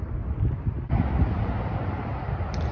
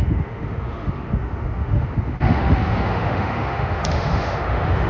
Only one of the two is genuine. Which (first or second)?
first